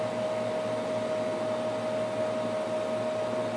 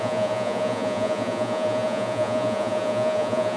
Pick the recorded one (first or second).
first